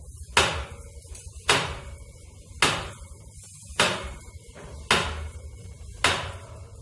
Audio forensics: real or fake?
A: real